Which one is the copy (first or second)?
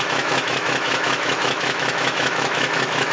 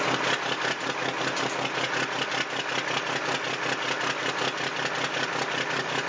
first